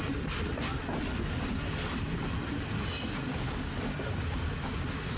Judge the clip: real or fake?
real